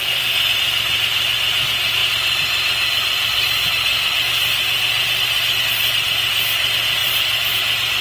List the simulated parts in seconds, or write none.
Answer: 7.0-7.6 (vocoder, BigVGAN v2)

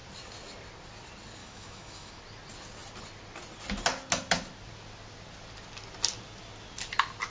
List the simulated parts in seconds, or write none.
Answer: 1.4-2.2 (autoencoder, DAC-VAE)